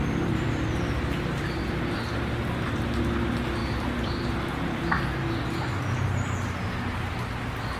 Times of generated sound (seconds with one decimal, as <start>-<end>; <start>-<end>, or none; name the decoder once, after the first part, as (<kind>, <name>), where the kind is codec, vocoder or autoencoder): none